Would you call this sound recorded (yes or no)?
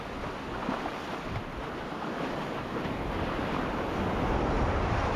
yes